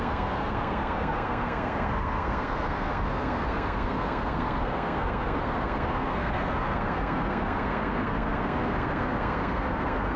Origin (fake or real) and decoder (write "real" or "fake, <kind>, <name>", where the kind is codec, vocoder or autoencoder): fake, codec, SNAC